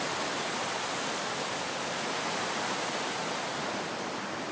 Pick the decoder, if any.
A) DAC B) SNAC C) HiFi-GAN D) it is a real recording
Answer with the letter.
D